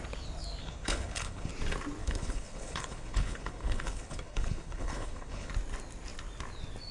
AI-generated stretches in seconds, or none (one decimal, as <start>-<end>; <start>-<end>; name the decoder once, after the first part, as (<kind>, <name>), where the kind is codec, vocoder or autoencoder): 0.6-1.5 (codec, HILCodec); 2.0-5.5